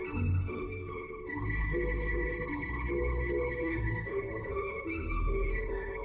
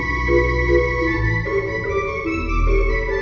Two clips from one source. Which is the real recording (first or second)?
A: second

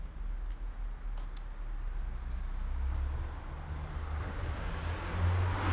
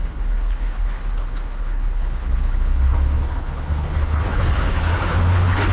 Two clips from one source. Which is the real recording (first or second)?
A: first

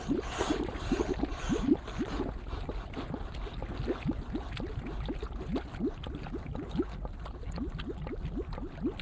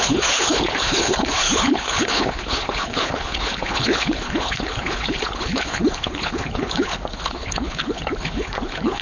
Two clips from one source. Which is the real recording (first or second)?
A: first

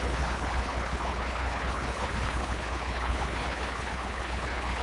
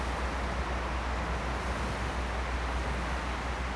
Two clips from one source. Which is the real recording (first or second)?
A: second